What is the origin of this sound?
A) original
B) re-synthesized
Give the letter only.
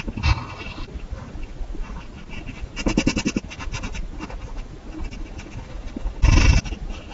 A